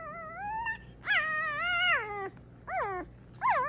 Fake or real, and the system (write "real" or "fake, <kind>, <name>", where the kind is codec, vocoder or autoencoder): real